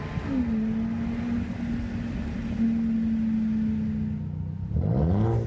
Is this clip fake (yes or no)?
no